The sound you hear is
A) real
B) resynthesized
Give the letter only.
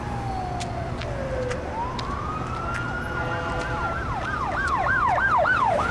A